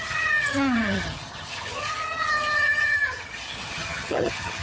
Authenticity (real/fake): fake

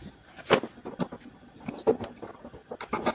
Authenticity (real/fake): real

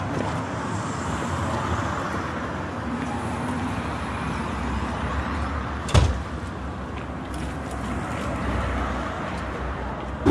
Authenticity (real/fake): real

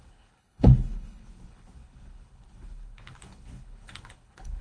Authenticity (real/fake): fake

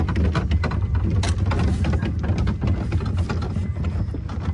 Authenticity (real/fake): real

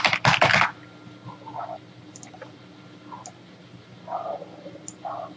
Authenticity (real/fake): real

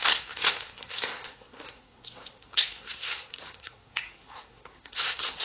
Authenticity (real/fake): fake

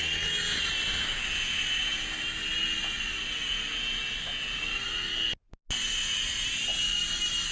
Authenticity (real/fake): real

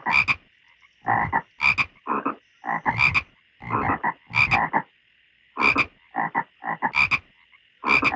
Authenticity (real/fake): real